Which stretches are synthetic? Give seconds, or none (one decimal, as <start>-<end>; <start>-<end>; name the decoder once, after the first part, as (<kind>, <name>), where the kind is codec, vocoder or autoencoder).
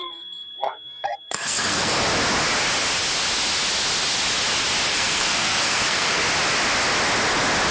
0.0-1.9 (codec, SNAC); 4.9-6.2